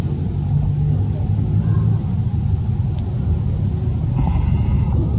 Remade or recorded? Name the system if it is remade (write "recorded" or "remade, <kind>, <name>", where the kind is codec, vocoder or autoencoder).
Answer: recorded